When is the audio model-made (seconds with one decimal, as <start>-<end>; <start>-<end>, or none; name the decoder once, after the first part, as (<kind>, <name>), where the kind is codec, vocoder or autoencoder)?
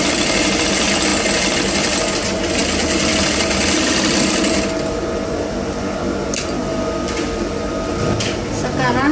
none